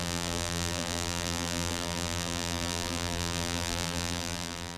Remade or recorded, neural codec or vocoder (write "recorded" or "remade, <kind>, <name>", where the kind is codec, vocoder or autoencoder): remade, vocoder, BigVGAN v2